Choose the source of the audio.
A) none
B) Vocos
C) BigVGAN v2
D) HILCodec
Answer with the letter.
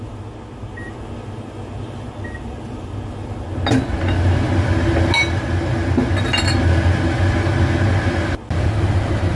A